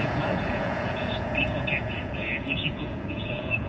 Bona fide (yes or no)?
no